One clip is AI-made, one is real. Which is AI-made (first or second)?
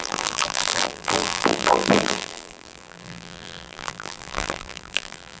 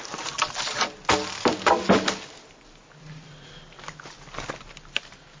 first